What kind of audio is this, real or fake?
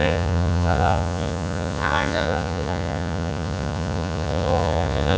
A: fake